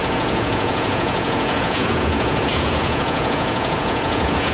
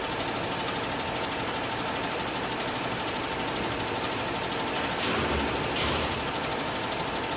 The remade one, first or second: first